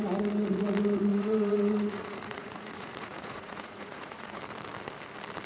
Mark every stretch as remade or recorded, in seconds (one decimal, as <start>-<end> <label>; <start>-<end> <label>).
0.0-1.1 recorded; 1.1-4.4 remade; 4.4-5.5 recorded

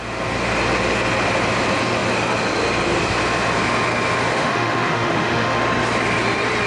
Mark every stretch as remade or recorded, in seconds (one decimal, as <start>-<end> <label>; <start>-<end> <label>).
0.0-4.3 recorded; 4.3-5.6 remade; 5.6-6.7 recorded

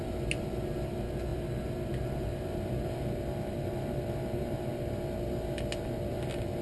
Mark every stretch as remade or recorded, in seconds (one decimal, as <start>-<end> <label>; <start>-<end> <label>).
0.0-6.6 recorded

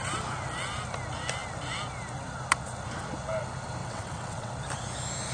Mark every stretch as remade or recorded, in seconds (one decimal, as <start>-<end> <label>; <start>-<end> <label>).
0.0-3.8 recorded; 3.8-4.5 remade; 4.5-5.3 recorded

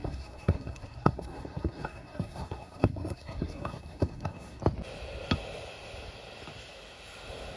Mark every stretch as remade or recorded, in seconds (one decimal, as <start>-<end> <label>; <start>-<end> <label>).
0.0-4.6 remade; 4.6-7.6 recorded